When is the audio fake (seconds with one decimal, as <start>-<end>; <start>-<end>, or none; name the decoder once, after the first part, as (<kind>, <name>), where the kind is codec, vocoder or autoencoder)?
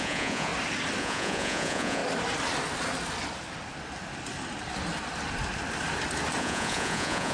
0.0-0.5 (vocoder, Vocos); 1.0-2.0; 6.4-7.3